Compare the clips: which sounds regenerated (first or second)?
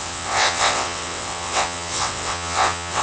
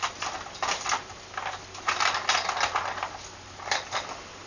first